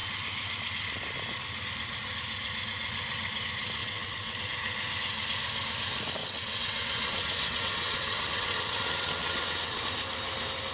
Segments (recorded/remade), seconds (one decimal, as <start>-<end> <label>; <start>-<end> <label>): 0.0-3.8 recorded; 3.8-4.4 remade; 4.4-6.2 recorded; 6.2-9.8 remade; 9.8-10.7 recorded

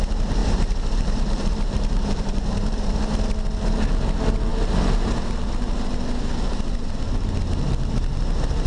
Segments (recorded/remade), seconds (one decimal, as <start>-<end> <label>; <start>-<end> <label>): 0.0-0.4 recorded; 0.4-2.9 remade; 2.9-8.7 recorded

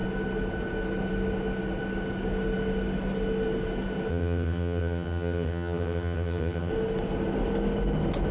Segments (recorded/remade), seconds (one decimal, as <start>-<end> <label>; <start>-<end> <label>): 0.0-4.1 recorded; 4.1-6.7 remade; 6.7-8.3 recorded

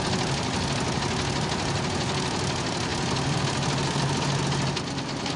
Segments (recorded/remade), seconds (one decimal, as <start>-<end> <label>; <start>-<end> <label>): 0.0-5.4 recorded

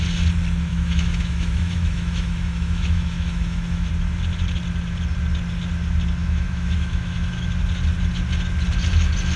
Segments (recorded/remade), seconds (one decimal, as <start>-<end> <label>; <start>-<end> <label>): 0.0-0.7 recorded; 0.7-3.9 remade; 3.9-6.2 recorded; 6.2-7.6 remade; 7.6-9.4 recorded